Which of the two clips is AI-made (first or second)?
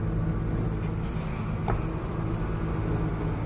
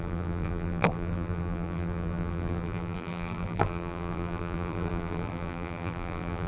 second